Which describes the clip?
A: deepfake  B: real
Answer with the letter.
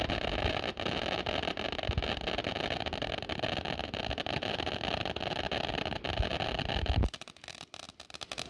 B